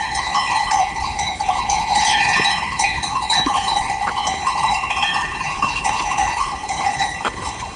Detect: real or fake fake